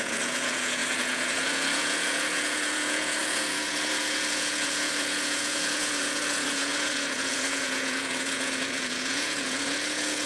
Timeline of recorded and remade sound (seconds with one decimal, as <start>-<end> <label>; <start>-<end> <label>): 0.0-10.3 remade